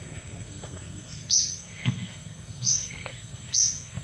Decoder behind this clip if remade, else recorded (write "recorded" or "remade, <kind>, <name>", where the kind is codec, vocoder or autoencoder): remade, codec, SNAC